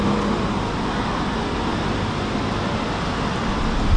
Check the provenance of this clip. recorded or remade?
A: recorded